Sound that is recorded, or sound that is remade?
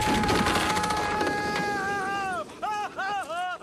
recorded